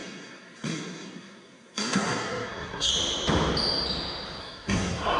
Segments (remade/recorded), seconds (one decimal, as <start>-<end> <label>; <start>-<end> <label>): 0.0-2.9 remade; 2.9-4.4 recorded; 4.4-5.2 remade